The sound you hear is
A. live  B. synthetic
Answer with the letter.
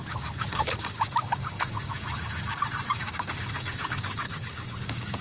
B